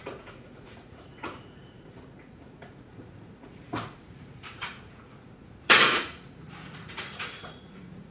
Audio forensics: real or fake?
fake